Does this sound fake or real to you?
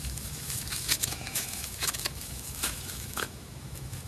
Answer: fake